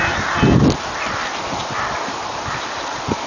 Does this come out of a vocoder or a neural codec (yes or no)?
no